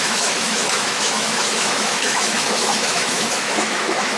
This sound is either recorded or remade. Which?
remade